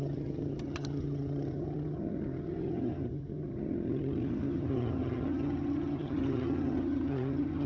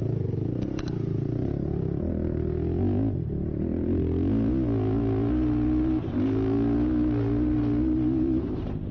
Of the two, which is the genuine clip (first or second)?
second